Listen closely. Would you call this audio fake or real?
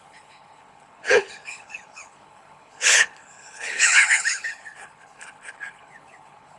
fake